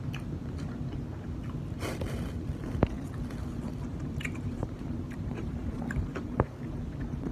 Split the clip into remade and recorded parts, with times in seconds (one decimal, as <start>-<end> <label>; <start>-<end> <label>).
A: 0.0-3.9 recorded; 3.9-6.5 remade; 6.5-7.3 recorded